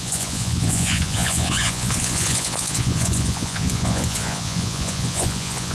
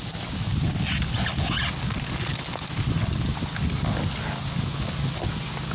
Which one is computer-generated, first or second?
first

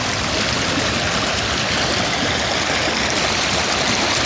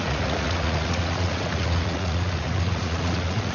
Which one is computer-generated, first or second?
second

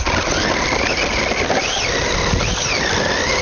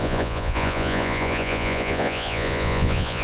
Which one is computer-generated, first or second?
second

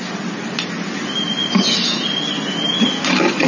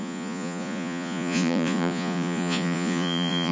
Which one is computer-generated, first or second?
second